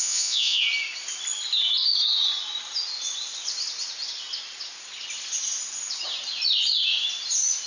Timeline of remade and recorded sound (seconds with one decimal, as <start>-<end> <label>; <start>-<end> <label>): 0.0-0.6 remade; 0.6-7.7 recorded

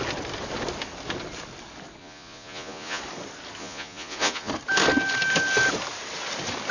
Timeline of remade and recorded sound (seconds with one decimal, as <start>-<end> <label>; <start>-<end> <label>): 0.0-2.0 recorded; 2.0-3.0 remade; 3.0-3.6 recorded; 3.6-4.5 remade; 4.5-6.7 recorded